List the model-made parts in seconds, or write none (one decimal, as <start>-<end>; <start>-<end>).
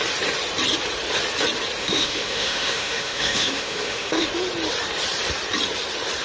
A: 1.8-4.3